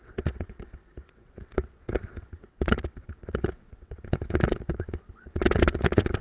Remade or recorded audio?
remade